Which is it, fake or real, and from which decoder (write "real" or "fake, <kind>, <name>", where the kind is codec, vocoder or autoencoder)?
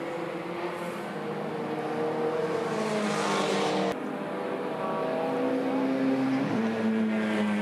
real